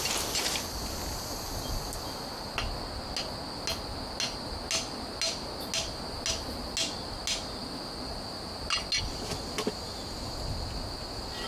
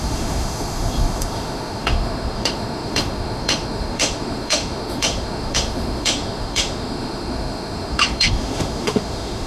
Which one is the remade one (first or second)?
second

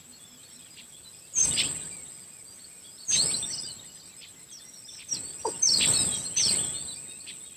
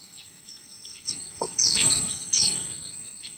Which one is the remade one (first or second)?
second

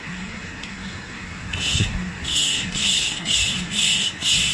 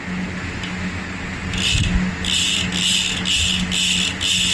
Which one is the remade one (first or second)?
first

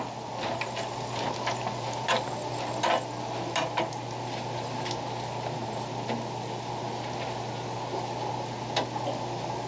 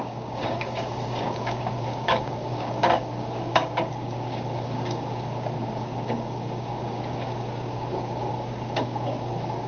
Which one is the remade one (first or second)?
second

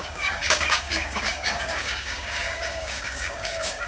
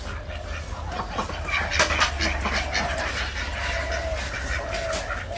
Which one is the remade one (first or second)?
first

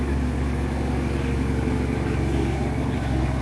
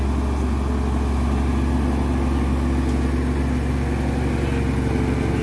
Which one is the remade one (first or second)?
first